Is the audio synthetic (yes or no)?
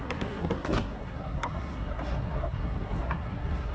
yes